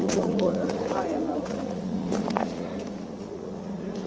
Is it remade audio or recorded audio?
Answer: remade